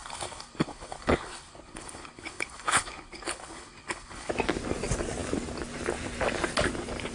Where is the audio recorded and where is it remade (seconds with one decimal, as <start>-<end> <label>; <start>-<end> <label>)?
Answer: 0.0-4.3 remade; 4.3-7.1 recorded